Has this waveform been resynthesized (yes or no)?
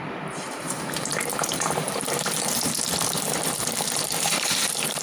yes